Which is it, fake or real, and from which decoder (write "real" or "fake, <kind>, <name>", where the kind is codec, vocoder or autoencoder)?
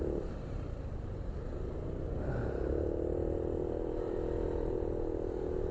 fake, vocoder, BigVGAN v2